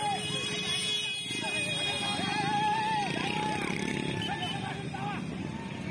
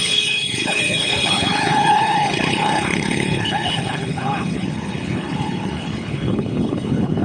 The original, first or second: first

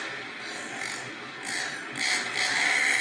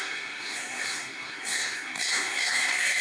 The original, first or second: first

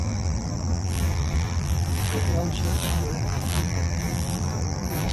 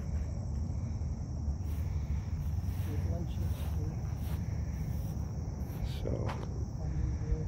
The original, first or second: second